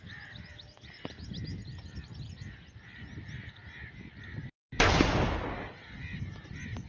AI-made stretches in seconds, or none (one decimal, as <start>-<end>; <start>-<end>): none